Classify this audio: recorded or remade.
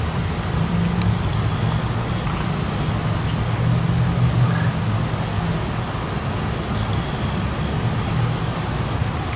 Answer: recorded